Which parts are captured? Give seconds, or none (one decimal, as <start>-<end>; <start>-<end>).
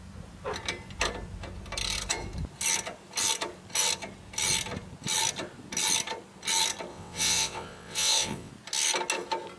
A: 0.0-6.9; 8.5-9.6